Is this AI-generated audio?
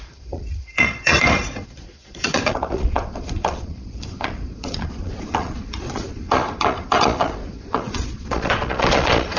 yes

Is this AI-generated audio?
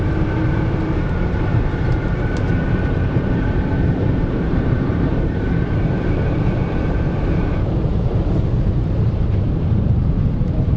yes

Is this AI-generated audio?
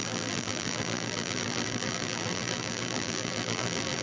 yes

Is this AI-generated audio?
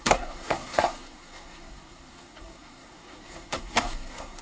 yes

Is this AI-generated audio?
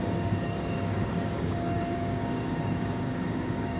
yes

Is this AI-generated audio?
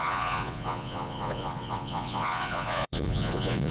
yes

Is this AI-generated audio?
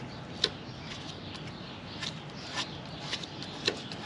no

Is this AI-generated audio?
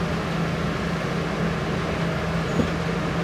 no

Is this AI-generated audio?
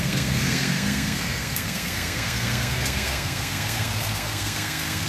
yes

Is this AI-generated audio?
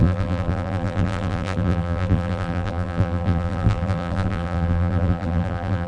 yes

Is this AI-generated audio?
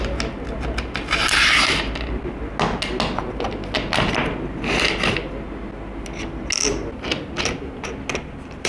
no